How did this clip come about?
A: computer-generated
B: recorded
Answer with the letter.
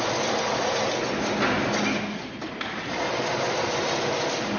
B